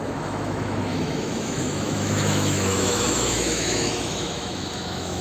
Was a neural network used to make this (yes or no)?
yes